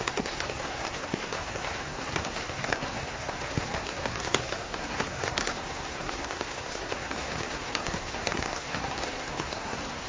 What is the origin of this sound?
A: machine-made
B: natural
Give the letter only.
A